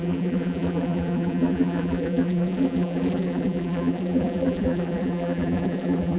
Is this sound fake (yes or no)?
yes